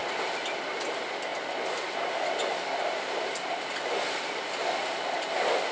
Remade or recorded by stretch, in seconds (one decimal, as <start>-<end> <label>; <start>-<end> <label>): 0.0-5.7 recorded